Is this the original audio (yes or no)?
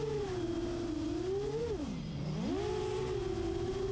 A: yes